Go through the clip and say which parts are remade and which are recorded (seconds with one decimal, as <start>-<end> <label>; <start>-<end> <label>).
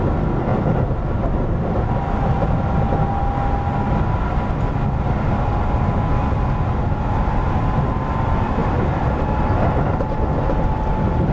0.0-8.6 recorded; 8.6-9.6 remade; 9.6-11.3 recorded